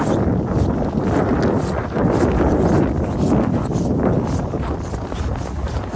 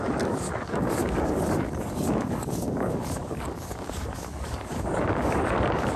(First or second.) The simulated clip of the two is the second